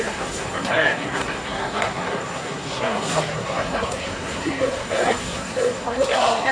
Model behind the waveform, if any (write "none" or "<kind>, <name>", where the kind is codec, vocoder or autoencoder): codec, SNAC